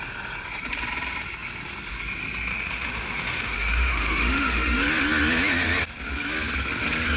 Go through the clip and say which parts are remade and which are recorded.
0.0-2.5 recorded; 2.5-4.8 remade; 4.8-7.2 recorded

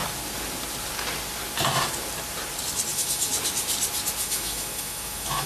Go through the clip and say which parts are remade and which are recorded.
0.0-2.9 recorded; 2.9-3.3 remade; 3.3-4.2 recorded; 4.2-5.5 remade

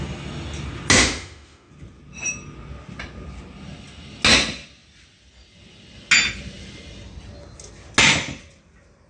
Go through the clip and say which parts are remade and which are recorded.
0.0-1.0 recorded; 1.0-1.7 remade; 1.7-9.1 recorded

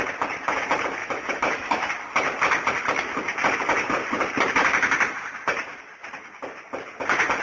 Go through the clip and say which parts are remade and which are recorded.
0.0-1.0 recorded; 1.0-1.9 remade; 1.9-7.4 recorded

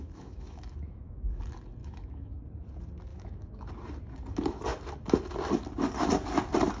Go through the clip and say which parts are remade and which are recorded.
0.0-1.4 remade; 1.4-1.8 recorded; 1.8-2.4 remade; 2.4-3.1 recorded; 3.1-3.7 remade; 3.7-6.8 recorded

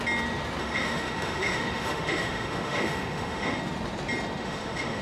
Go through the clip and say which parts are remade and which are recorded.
0.0-0.6 recorded; 0.6-3.6 remade; 3.6-4.4 recorded; 4.4-5.0 remade

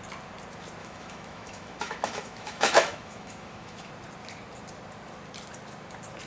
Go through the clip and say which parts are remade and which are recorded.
0.0-0.8 recorded; 0.8-3.9 remade; 3.9-6.3 recorded